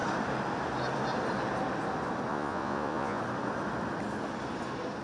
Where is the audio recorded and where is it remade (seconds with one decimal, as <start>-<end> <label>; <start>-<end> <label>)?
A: 0.0-2.3 recorded; 2.3-3.2 remade; 3.2-5.0 recorded